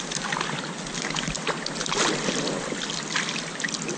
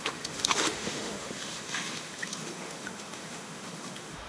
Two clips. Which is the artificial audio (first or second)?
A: second